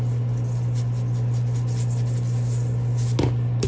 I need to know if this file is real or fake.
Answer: real